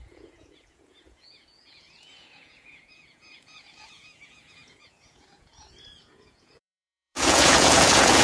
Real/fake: fake